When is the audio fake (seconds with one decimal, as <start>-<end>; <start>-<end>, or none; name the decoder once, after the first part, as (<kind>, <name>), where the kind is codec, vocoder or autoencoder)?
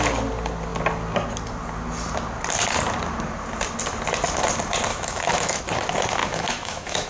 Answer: 4.9-5.6 (autoencoder, DAC-VAE); 6.2-7.1